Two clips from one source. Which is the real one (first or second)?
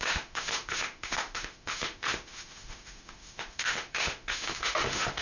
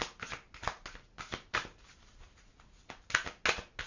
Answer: second